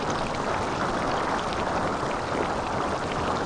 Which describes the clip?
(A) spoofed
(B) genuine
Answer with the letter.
B